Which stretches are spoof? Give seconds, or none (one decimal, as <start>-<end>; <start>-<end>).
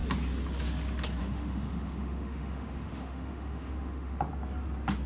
1.2-4.3